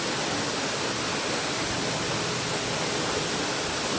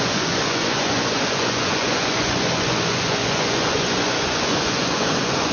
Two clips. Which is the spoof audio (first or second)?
second